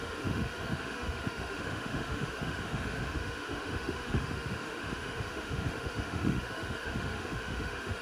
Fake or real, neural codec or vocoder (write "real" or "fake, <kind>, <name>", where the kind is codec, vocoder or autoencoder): fake, autoencoder, DAC-VAE